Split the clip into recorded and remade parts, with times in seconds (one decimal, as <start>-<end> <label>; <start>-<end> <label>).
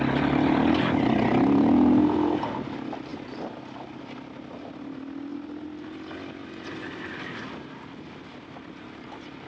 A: 0.0-9.5 recorded